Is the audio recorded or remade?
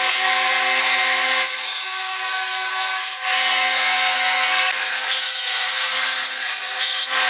remade